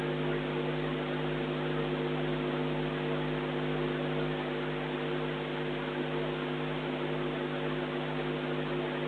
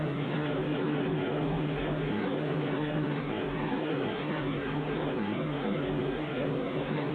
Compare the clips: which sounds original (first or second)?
first